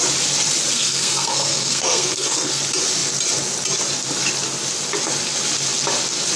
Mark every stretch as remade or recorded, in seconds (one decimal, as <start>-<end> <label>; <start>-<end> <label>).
0.0-0.7 recorded; 0.7-2.6 remade; 2.6-6.4 recorded